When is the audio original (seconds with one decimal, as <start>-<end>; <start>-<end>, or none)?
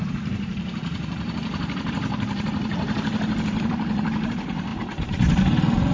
none